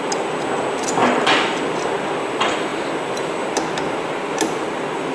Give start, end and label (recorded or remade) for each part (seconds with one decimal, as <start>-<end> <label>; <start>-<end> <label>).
0.0-5.1 recorded